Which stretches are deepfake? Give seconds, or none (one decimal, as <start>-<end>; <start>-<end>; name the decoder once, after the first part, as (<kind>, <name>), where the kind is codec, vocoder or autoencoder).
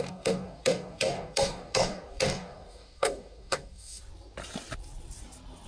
0.0-4.0 (codec, DAC)